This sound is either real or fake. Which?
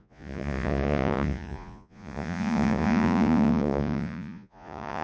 fake